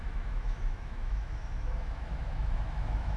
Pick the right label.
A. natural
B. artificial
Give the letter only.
B